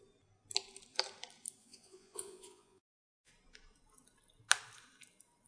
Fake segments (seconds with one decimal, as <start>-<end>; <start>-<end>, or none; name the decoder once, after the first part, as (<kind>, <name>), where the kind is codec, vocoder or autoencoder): 1.6-3.3 (vocoder, Vocos)